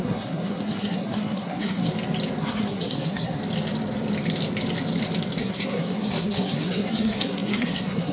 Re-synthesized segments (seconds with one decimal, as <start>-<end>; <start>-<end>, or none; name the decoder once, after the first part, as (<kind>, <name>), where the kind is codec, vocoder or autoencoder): 0.0-1.9 (codec, SNAC); 2.4-3.4; 5.4-8.1